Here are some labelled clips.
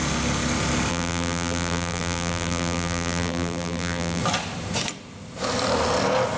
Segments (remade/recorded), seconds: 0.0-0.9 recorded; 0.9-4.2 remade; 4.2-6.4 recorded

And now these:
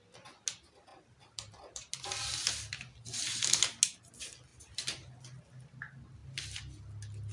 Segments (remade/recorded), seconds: 0.0-0.9 recorded; 0.9-1.9 remade; 1.9-4.5 recorded; 4.5-5.4 remade; 5.4-7.3 recorded

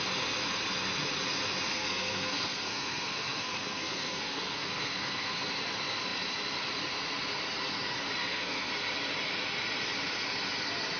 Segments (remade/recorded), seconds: 0.0-1.7 recorded; 1.7-5.5 remade; 5.5-8.2 recorded; 8.2-8.7 remade; 8.7-11.0 recorded

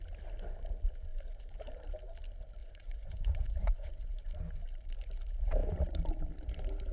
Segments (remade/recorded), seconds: 0.0-1.1 recorded; 1.1-1.6 remade; 1.6-2.6 recorded; 2.6-3.9 remade; 3.9-6.9 recorded

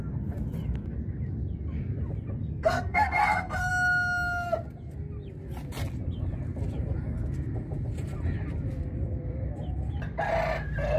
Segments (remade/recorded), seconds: 0.0-2.4 recorded; 2.4-3.7 remade; 3.7-11.0 recorded

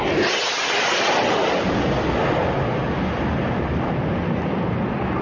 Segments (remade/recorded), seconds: 0.0-5.2 recorded

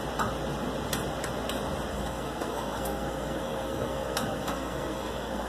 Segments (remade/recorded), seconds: 0.0-1.9 recorded; 1.9-5.5 remade

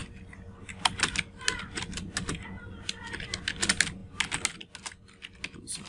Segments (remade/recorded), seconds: 0.0-5.9 recorded